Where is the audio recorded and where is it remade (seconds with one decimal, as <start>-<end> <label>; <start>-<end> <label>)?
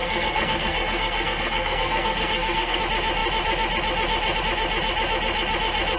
0.0-2.8 remade; 2.8-6.0 recorded